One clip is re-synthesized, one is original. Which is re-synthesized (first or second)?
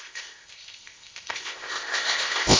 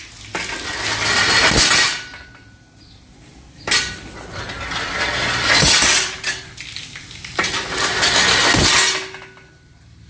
first